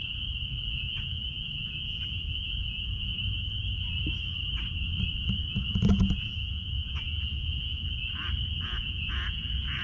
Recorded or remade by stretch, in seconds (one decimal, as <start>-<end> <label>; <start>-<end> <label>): 0.0-0.6 recorded; 0.6-3.1 remade; 3.1-5.6 recorded; 5.6-8.0 remade; 8.0-8.5 recorded; 8.5-9.8 remade